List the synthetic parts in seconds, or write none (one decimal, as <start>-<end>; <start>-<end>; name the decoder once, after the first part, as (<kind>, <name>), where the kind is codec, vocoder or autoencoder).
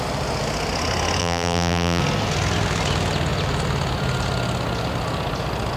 1.2-2.0 (vocoder, BigVGAN v2)